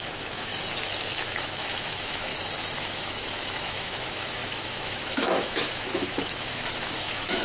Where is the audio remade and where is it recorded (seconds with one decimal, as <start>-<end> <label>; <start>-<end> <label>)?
0.0-0.5 remade; 0.5-1.0 recorded; 1.0-2.3 remade; 2.3-2.8 recorded; 2.8-7.4 remade